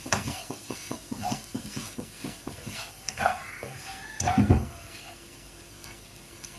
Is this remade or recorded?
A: remade